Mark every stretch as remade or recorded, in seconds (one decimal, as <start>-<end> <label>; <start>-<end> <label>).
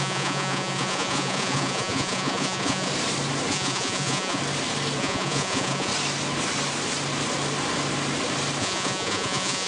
0.0-2.9 remade; 2.9-3.5 recorded; 3.5-4.4 remade; 4.4-5.0 recorded; 5.0-5.9 remade; 5.9-8.6 recorded; 8.6-9.7 remade